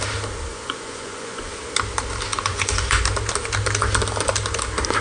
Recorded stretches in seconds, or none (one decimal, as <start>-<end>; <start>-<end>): 0.0-0.5; 1.5-2.3; 3.0-5.0